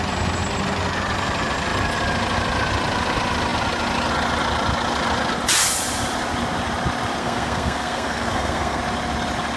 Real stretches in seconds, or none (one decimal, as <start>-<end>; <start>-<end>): 0.0-7.2; 8.8-9.6